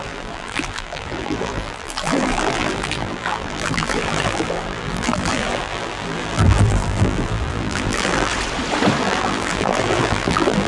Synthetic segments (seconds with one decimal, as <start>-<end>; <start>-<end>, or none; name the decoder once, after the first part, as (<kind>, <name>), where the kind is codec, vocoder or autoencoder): 0.0-8.3 (vocoder, BigVGAN v2); 9.0-10.7